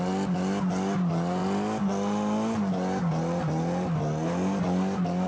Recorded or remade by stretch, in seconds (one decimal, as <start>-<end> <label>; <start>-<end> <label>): 0.0-5.3 recorded